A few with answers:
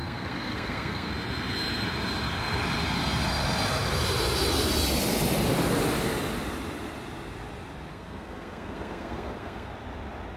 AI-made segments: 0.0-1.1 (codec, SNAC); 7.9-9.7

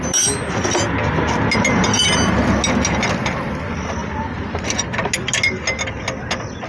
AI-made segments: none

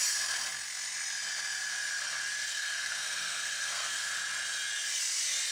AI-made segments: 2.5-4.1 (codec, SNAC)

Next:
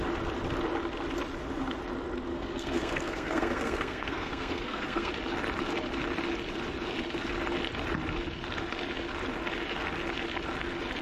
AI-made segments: 2.3-5.1 (codec, SNAC)

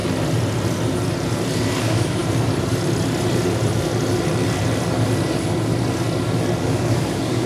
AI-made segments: 1.8-2.2 (codec, DAC); 6.6-7.5

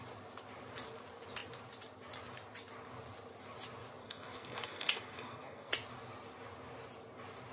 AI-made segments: 4.0-5.7 (codec, SNAC)